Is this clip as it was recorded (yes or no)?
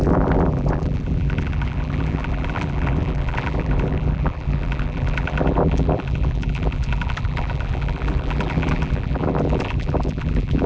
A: no